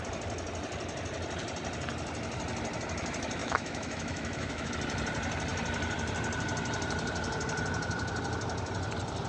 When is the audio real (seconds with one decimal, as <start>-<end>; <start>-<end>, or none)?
0.0-3.4; 4.7-9.3